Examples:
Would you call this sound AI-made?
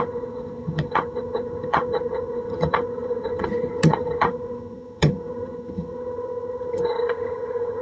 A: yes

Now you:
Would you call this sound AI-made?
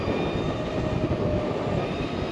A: no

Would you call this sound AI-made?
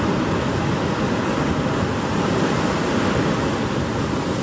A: no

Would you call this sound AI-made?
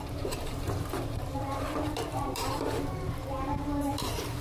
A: yes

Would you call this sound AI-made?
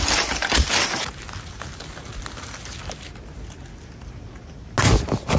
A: no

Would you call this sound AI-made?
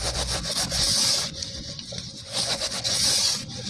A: yes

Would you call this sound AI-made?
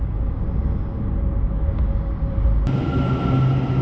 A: no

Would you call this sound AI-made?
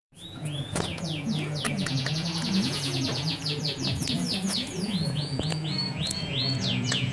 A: yes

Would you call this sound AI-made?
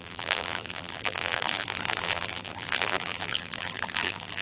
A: yes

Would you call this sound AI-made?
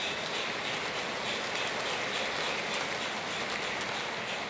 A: no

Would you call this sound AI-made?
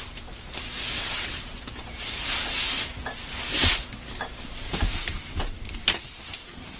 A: yes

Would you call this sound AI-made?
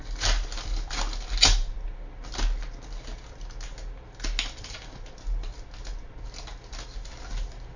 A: no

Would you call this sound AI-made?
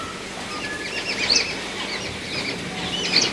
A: no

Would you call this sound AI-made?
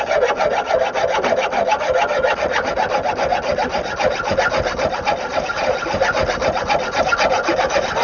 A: no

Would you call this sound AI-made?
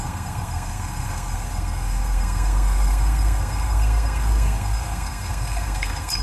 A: yes